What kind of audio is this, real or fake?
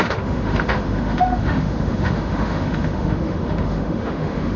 fake